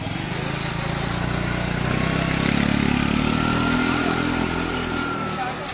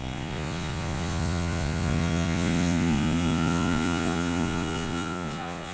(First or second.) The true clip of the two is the first